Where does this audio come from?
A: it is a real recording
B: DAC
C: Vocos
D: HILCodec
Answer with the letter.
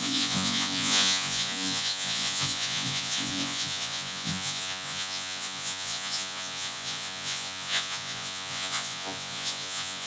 C